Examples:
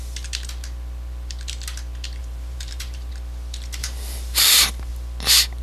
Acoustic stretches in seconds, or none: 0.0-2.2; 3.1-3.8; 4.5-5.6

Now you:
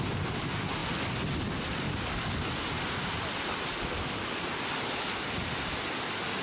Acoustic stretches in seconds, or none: 0.0-6.4

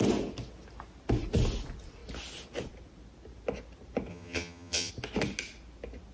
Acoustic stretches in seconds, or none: 0.0-4.1; 4.9-6.1